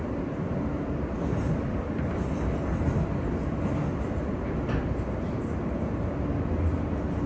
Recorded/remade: recorded